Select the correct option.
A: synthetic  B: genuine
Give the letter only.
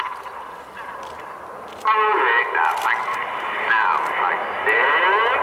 B